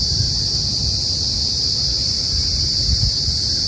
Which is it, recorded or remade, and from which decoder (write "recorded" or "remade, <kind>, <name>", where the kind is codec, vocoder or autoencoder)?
recorded